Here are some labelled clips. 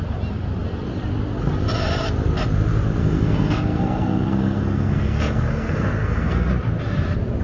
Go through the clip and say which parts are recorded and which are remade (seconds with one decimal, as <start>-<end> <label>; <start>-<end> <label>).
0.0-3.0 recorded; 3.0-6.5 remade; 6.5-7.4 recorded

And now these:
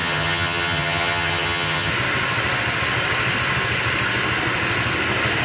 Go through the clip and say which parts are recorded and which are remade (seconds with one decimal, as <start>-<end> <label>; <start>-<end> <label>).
0.0-1.9 remade; 1.9-5.4 recorded

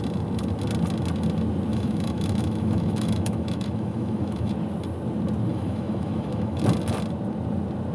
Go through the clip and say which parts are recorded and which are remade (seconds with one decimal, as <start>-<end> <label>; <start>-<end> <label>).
0.0-1.7 recorded; 1.7-4.5 remade; 4.5-5.5 recorded; 5.5-6.6 remade; 6.6-7.9 recorded

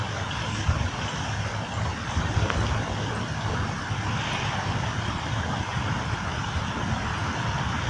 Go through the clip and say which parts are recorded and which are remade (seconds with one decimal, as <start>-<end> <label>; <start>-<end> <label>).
0.0-7.9 recorded

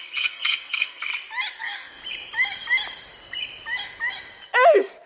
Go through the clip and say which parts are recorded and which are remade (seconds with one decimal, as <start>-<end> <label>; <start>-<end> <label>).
0.0-1.1 remade; 1.1-1.6 recorded; 1.6-2.0 remade; 2.0-5.1 recorded

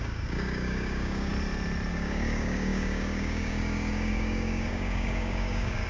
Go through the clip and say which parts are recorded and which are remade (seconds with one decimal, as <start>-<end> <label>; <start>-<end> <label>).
0.0-1.3 remade; 1.3-1.9 recorded; 1.9-5.9 remade

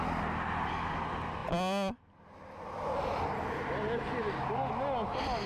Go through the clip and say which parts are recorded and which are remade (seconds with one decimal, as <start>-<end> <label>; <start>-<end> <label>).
0.0-5.5 recorded